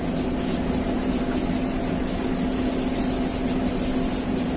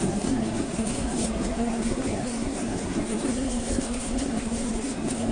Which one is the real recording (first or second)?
first